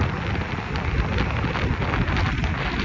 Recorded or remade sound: recorded